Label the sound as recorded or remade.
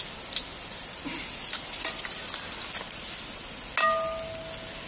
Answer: recorded